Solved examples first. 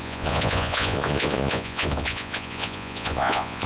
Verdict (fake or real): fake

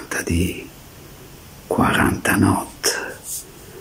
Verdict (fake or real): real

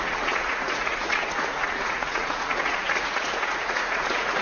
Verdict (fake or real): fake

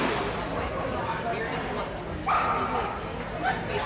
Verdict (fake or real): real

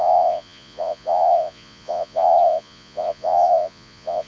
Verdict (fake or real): fake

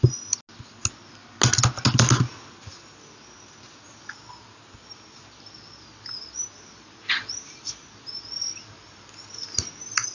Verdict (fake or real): real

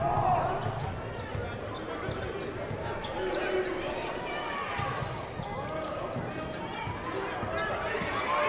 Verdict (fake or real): real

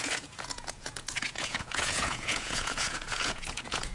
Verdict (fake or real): fake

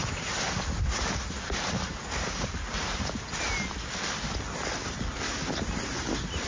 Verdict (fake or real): real